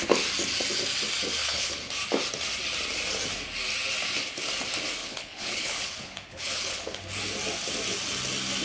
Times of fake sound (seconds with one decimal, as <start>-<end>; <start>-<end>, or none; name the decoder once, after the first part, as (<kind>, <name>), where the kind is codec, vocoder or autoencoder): 1.4-1.9 (codec, HILCodec); 5.0-7.0